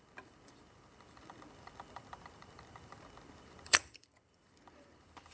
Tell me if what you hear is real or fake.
fake